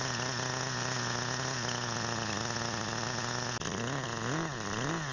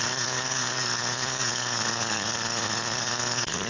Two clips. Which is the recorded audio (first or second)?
first